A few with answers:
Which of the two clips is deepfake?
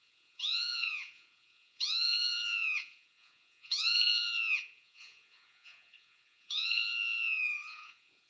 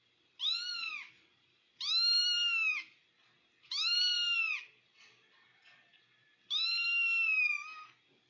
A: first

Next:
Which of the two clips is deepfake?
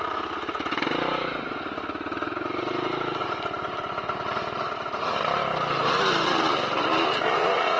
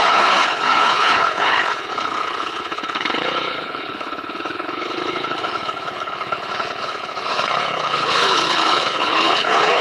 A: second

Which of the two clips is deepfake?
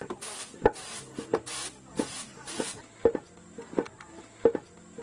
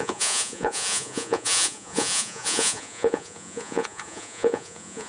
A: second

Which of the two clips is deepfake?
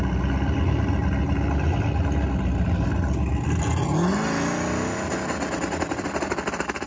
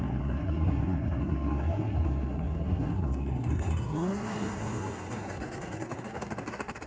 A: second